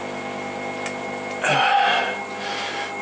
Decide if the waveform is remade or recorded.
recorded